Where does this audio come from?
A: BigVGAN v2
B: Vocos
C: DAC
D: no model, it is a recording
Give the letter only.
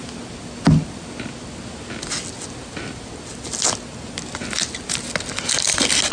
D